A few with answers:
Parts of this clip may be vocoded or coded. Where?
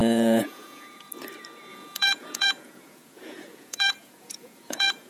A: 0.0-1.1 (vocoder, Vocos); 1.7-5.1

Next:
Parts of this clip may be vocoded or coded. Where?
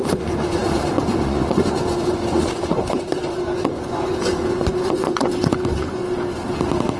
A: 0.0-6.0 (vocoder, Vocos)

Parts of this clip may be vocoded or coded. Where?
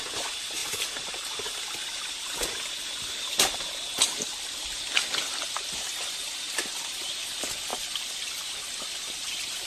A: none